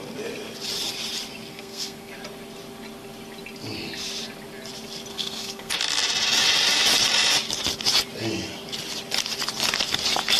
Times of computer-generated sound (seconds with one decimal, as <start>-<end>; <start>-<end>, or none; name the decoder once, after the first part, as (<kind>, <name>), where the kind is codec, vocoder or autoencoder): 1.5-2.1 (codec, SNAC); 5.1-5.7